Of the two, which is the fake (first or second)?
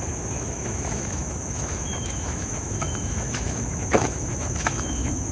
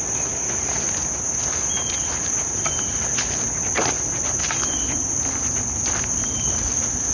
first